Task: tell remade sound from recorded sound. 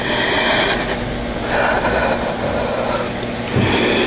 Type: recorded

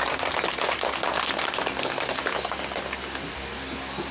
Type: recorded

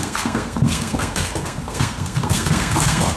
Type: remade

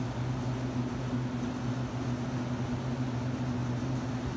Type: recorded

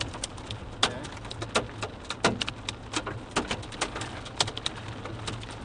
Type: recorded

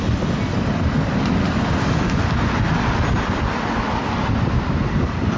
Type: recorded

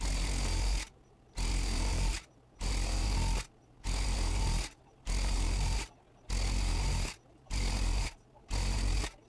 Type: recorded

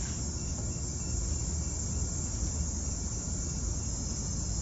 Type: recorded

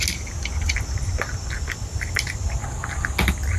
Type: recorded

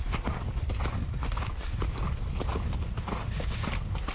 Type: recorded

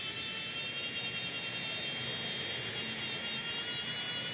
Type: recorded